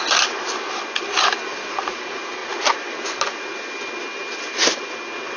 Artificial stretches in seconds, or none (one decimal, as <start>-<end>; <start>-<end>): 1.5-2.0